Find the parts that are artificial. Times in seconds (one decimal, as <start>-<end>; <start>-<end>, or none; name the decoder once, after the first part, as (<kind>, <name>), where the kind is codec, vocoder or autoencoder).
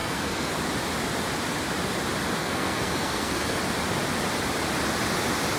0.0-0.5 (codec, SNAC); 2.4-3.6